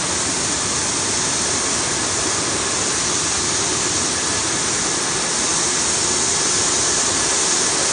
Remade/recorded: recorded